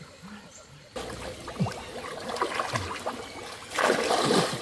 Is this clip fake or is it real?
real